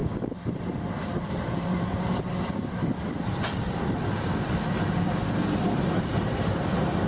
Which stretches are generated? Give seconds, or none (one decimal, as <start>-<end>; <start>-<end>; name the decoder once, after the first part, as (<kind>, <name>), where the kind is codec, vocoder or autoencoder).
0.0-2.3 (vocoder, BigVGAN v2); 5.6-7.1

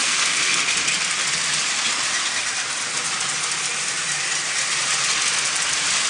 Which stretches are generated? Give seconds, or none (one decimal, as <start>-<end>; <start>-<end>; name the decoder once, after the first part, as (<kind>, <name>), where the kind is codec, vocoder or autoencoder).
0.0-0.6 (codec, SNAC)

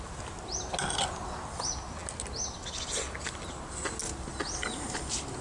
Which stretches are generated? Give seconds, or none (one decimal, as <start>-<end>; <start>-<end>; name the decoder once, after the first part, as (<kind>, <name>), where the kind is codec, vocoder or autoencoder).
none